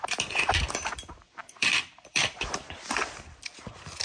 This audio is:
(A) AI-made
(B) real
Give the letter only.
A